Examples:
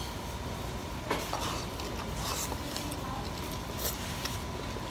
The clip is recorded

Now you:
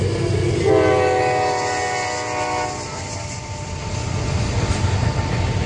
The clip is recorded